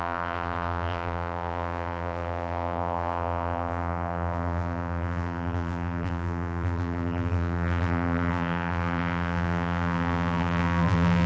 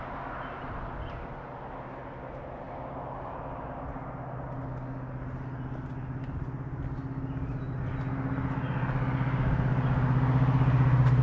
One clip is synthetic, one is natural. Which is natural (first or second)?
second